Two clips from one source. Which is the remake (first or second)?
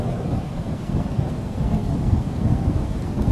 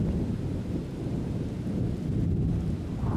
first